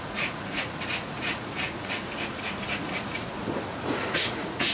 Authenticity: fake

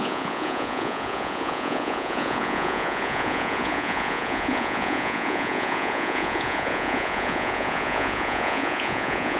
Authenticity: fake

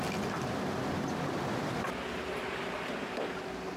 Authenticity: real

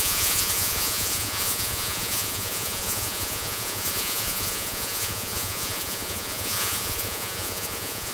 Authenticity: fake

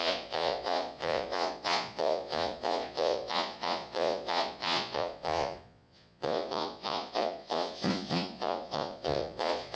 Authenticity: fake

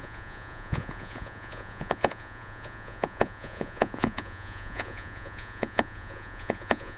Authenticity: fake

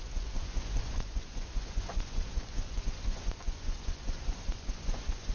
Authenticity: fake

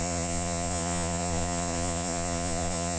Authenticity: fake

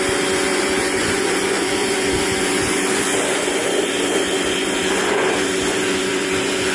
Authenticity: fake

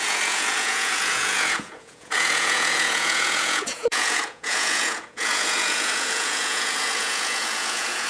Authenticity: fake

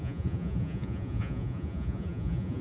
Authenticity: fake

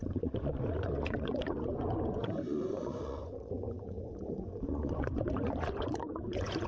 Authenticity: fake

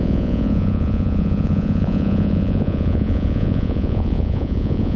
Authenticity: fake